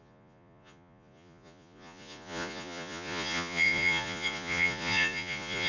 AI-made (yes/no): yes